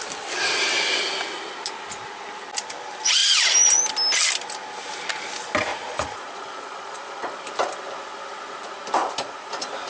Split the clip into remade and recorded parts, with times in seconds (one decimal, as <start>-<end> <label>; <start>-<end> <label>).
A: 0.0-5.7 recorded; 5.7-7.3 remade; 7.3-9.0 recorded; 9.0-9.5 remade; 9.5-9.9 recorded